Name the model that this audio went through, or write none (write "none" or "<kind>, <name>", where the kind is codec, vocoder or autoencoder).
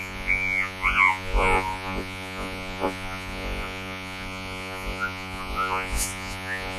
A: vocoder, Vocos